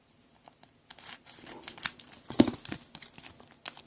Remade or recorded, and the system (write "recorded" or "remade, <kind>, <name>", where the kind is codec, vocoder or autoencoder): recorded